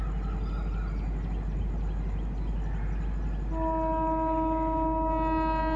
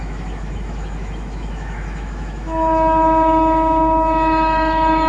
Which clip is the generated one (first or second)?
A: second